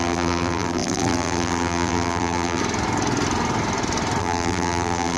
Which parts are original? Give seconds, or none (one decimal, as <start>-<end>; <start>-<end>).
2.6-4.2